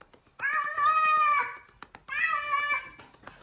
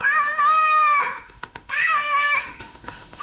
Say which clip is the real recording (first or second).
first